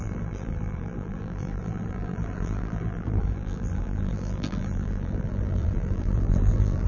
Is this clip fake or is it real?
fake